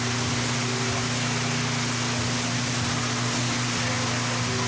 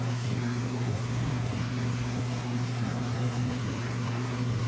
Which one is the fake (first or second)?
second